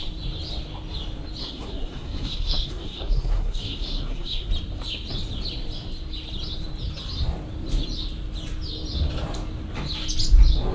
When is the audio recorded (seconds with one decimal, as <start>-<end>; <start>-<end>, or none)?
0.0-1.4; 4.5-10.7